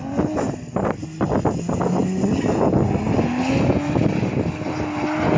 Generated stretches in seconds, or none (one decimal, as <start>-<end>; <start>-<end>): none